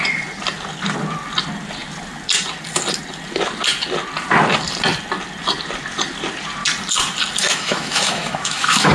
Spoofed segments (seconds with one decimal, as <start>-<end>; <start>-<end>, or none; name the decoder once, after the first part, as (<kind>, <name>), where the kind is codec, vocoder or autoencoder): 7.4-8.9 (autoencoder, DAC-VAE)